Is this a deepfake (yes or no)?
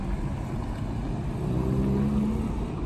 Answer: no